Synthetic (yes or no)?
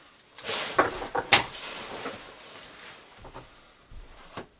yes